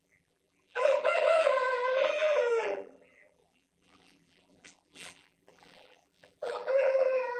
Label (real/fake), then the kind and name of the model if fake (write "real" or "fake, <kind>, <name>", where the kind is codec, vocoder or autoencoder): fake, vocoder, BigVGAN v2